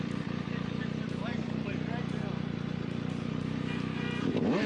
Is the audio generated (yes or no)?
yes